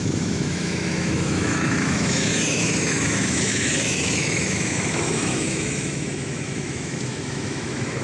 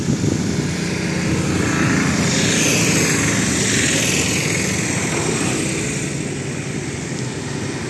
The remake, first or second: first